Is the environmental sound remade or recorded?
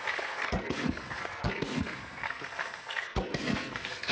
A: remade